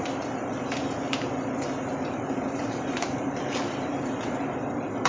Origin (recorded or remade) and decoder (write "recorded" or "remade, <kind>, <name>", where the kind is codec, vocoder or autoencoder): remade, vocoder, BigVGAN v2